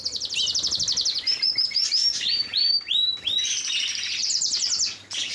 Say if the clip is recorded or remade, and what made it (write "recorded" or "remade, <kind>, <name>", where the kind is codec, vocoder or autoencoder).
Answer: recorded